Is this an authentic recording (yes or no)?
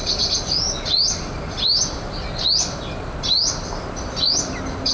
yes